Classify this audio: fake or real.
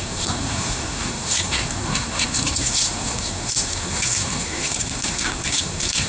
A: fake